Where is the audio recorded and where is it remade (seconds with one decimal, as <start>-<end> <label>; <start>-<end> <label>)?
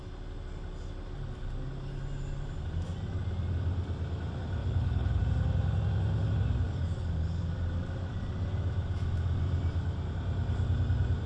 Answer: 0.0-4.6 recorded; 4.6-5.2 remade; 5.2-11.3 recorded